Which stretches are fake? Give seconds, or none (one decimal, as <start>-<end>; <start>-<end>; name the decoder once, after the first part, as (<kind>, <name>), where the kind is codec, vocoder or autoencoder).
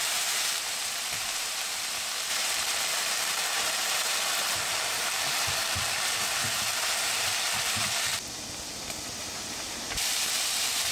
0.0-8.1 (vocoder, BigVGAN v2); 9.2-10.9